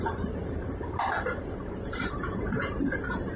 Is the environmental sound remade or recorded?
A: remade